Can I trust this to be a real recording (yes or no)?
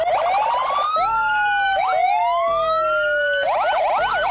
yes